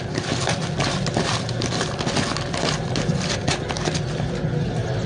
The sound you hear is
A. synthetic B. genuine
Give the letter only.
B